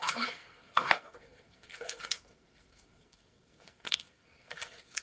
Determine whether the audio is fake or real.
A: fake